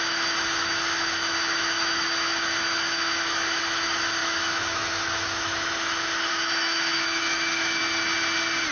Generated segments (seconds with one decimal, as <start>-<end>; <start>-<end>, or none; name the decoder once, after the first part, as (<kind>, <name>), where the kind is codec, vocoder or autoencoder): 0.0-7.8 (autoencoder, DAC-VAE)